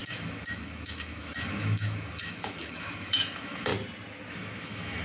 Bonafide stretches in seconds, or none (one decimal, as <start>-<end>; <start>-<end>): 3.7-4.3